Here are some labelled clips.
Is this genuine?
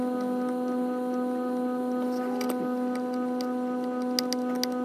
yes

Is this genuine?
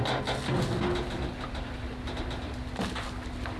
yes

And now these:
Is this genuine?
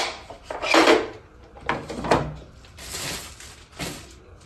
yes